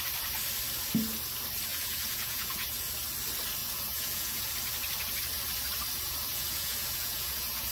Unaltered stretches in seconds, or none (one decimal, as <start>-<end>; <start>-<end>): 0.0-1.7; 2.9-3.6; 4.5-6.3